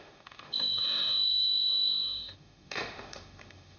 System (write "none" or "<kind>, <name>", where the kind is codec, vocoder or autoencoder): autoencoder, DAC-VAE